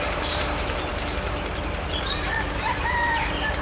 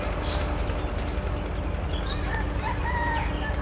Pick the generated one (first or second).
first